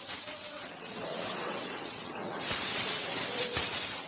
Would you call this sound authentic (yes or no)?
no